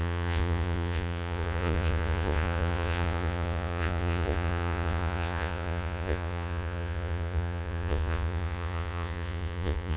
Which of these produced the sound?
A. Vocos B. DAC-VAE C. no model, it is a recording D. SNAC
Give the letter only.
A